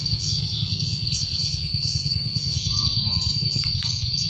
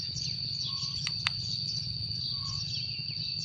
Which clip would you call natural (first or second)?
second